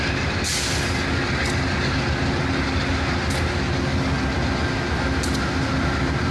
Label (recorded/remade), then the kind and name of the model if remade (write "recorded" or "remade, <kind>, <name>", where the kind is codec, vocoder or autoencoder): recorded